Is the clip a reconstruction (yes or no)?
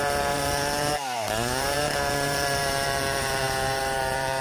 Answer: yes